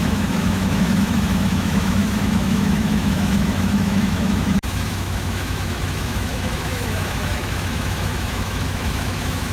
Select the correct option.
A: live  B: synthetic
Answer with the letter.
B